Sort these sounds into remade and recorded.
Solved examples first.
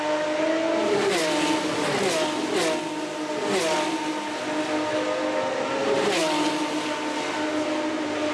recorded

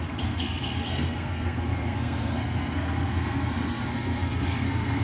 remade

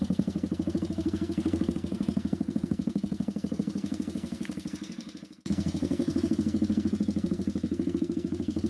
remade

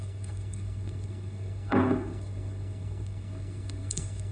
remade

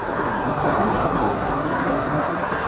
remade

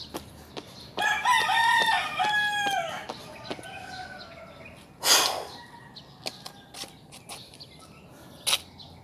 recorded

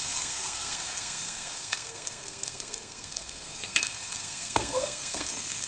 remade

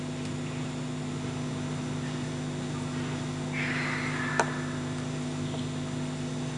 recorded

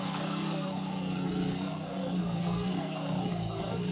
remade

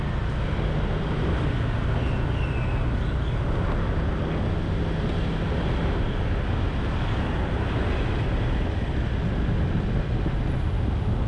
recorded